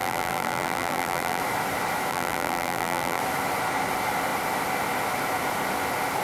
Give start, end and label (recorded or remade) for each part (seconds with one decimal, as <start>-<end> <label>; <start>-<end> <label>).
0.0-1.4 remade; 1.4-2.1 recorded; 2.1-3.2 remade; 3.2-6.2 recorded

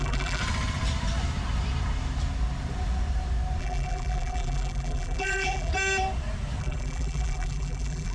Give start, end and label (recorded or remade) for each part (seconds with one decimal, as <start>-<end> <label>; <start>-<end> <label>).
0.0-0.4 remade; 0.4-3.6 recorded; 3.6-5.7 remade; 5.7-6.6 recorded; 6.6-8.1 remade

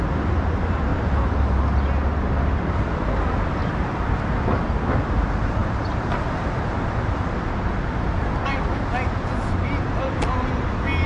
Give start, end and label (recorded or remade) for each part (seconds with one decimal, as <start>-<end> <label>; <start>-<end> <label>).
0.0-0.9 recorded; 0.9-1.6 remade; 1.6-3.6 recorded; 3.6-4.1 remade; 4.1-5.6 recorded; 5.6-6.8 remade; 6.8-8.1 recorded; 8.1-8.9 remade; 8.9-11.1 recorded

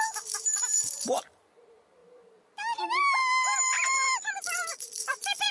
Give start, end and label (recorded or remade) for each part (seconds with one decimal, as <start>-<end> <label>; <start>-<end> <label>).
0.0-5.5 remade

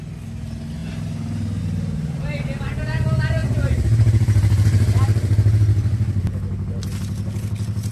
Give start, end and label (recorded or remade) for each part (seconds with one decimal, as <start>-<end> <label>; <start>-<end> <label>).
0.0-3.4 recorded; 3.4-5.0 remade; 5.0-7.9 recorded